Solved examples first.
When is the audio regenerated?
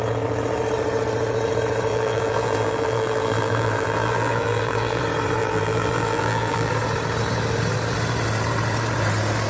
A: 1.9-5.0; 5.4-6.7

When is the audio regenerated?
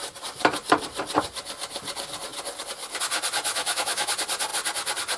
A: 3.5-4.1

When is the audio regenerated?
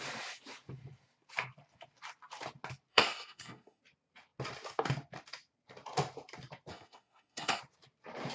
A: 2.9-3.8; 6.7-7.6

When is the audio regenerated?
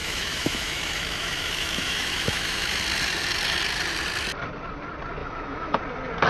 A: 0.0-2.8; 5.2-5.8